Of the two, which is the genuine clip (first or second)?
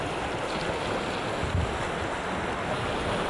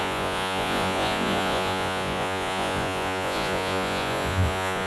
first